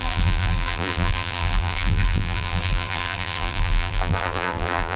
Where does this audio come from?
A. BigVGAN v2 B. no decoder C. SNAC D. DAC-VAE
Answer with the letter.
A